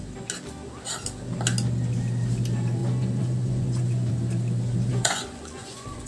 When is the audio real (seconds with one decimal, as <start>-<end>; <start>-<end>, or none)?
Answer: 0.0-2.8; 4.1-4.9